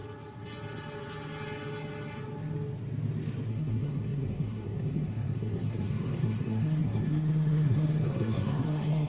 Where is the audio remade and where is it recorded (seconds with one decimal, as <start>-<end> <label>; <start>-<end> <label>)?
0.0-3.5 recorded; 3.5-9.1 remade